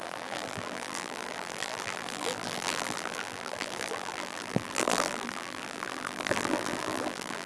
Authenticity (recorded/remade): remade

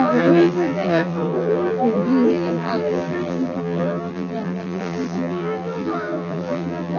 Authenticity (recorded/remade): remade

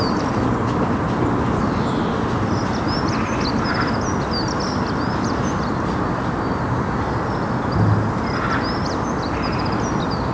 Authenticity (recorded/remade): recorded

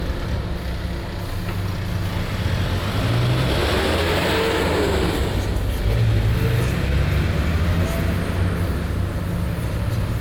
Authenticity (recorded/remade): recorded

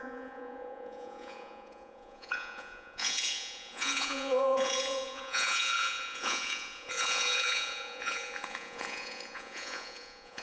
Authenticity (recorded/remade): remade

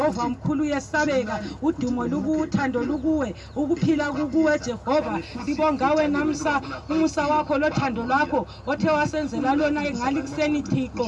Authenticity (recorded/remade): recorded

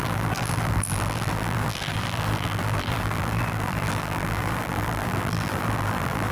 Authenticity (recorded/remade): remade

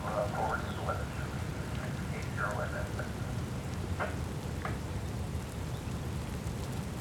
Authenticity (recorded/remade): remade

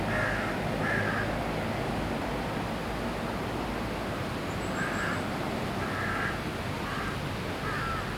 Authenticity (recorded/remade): recorded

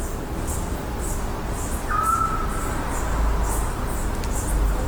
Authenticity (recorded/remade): recorded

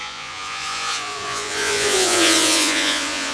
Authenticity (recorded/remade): remade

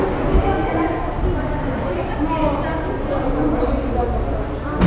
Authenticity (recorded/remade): recorded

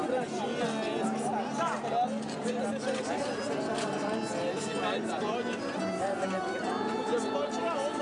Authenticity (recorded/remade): recorded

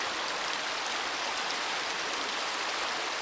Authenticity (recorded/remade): recorded